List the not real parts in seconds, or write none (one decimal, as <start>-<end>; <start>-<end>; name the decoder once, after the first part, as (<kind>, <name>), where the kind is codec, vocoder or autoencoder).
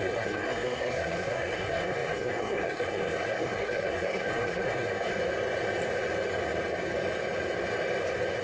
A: 0.0-5.1 (codec, SNAC)